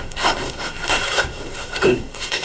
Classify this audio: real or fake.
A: fake